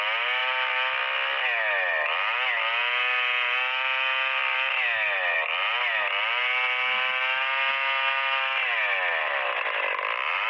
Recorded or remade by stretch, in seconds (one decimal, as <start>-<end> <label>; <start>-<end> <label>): 0.0-10.5 recorded